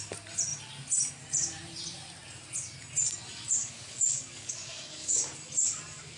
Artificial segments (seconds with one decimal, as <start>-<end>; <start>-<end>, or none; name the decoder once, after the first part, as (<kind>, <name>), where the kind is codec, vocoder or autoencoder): 3.6-5.3 (codec, DAC)